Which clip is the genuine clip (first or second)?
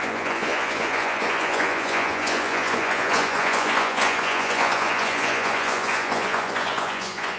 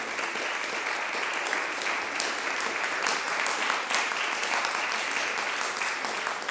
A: second